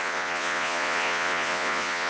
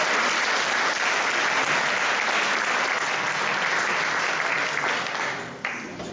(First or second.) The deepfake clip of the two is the first